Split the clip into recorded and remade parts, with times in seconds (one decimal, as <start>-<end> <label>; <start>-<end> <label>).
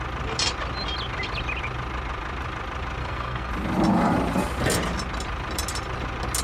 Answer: 0.0-3.0 recorded; 3.0-3.5 remade; 3.5-6.4 recorded